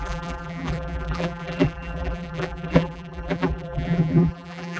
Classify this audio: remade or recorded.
remade